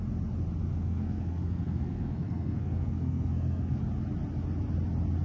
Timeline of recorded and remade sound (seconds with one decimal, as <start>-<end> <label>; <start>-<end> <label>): 0.0-0.7 recorded; 0.7-3.8 remade; 3.8-5.2 recorded